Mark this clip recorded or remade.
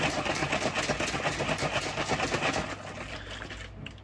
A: recorded